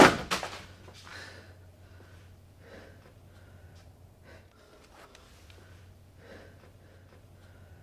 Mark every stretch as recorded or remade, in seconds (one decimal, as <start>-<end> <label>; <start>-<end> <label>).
0.0-7.8 recorded